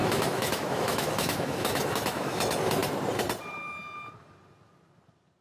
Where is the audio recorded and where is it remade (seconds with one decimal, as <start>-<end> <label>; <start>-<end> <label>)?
0.0-2.4 remade; 2.4-5.4 recorded